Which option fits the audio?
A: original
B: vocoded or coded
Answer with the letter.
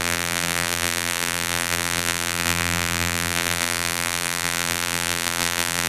B